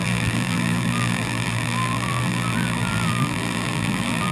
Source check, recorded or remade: remade